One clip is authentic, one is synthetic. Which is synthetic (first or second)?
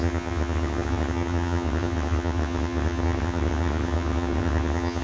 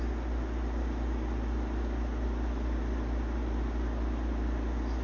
first